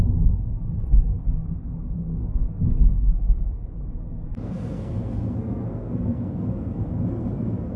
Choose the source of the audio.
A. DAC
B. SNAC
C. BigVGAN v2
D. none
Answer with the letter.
B